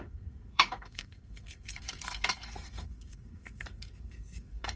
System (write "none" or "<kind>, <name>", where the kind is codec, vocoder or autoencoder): codec, SNAC